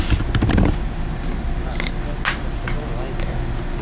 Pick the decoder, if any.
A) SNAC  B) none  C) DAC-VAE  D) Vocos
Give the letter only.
B